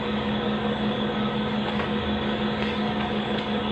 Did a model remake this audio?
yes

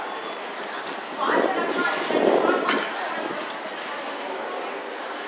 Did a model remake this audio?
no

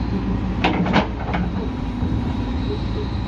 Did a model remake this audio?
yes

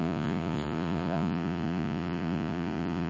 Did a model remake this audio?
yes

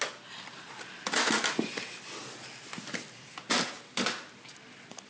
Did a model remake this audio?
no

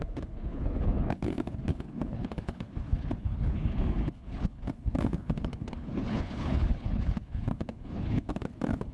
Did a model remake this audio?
yes